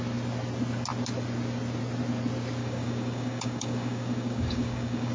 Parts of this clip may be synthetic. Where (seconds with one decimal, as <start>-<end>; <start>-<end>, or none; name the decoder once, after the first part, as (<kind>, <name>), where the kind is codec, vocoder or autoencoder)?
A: 2.6-5.1 (codec, DAC)